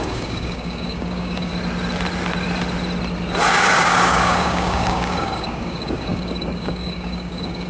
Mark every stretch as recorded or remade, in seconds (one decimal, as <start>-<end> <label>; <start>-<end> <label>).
0.0-1.5 remade; 1.5-3.5 recorded; 3.5-7.7 remade